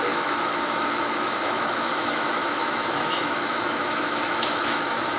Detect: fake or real fake